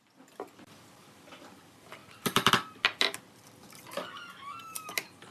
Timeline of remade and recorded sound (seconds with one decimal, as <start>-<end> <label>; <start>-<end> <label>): 0.0-5.3 recorded